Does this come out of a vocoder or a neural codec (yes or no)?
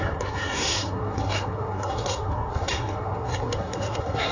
yes